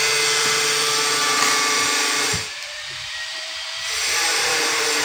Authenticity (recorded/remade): remade